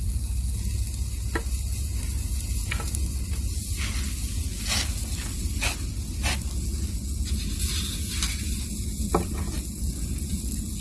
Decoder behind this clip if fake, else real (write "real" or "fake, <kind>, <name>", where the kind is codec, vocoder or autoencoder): real